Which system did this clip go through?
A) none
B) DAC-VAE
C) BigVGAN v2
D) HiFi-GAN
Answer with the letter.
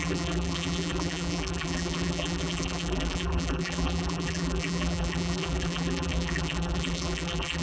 C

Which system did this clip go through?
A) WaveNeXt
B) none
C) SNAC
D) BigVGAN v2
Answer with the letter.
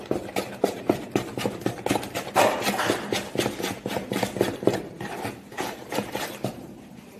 D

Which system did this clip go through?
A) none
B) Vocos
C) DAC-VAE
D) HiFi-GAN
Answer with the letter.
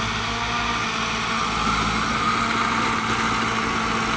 A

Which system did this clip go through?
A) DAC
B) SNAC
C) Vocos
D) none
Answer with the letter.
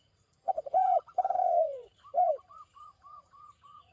C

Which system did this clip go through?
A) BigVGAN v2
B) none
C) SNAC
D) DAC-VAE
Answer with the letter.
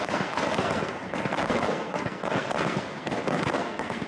C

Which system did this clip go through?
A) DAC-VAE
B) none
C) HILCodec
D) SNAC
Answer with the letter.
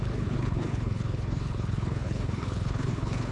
C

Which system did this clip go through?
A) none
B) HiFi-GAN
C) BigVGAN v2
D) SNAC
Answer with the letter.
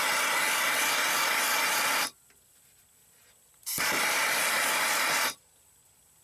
C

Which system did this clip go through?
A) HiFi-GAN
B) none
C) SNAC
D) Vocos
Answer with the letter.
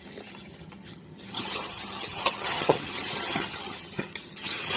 A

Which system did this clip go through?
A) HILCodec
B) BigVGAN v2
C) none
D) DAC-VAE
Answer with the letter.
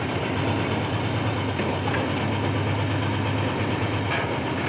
C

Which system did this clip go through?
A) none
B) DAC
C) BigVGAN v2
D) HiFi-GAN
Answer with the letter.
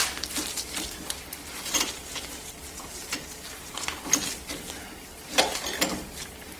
A